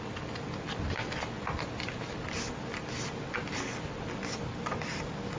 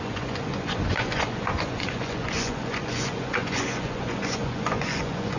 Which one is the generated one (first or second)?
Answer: second